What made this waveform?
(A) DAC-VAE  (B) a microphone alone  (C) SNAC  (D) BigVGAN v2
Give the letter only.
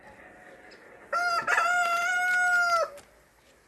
B